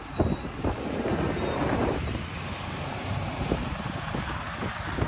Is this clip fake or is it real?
fake